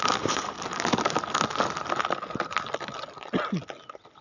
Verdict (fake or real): real